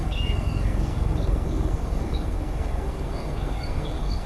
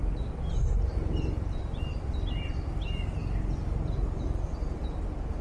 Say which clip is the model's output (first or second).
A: first